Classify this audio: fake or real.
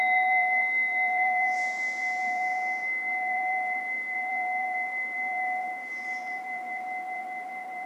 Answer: fake